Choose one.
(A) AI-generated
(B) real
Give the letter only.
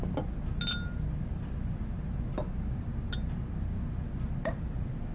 B